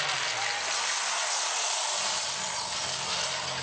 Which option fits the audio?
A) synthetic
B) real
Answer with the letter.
B